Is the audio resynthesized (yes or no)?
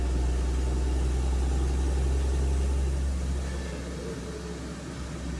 no